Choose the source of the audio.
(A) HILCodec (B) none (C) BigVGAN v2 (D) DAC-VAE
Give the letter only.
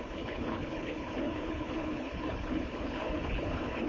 A